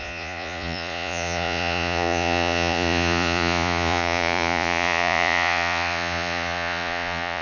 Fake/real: fake